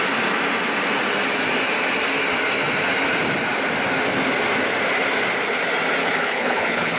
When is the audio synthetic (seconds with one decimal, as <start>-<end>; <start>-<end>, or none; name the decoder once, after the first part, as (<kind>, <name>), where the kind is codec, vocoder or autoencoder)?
6.0-7.0 (codec, HILCodec)